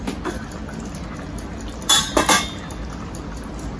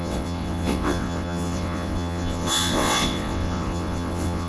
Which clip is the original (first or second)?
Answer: first